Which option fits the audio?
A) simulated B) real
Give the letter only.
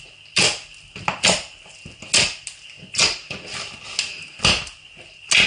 B